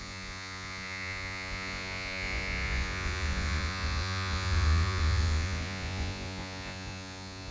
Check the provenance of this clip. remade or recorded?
remade